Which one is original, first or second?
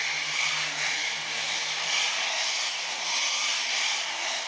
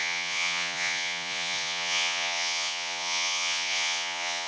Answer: first